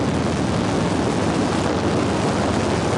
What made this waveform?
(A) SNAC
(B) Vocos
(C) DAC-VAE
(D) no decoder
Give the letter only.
D